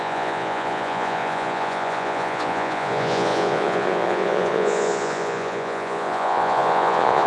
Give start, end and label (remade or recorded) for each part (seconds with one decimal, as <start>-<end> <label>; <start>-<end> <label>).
0.0-7.3 remade